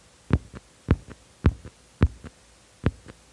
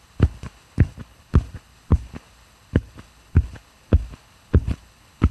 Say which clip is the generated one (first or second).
second